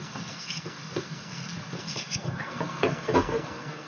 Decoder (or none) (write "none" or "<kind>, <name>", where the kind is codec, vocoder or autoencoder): codec, SNAC